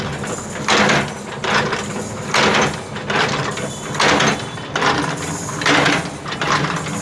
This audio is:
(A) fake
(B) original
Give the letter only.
B